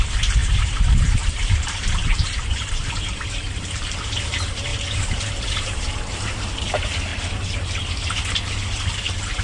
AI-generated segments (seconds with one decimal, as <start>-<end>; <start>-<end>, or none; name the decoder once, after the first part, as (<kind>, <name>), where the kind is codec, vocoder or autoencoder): 0.0-7.1 (vocoder, BigVGAN v2); 8.9-9.4